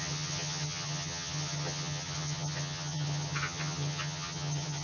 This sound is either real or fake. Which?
fake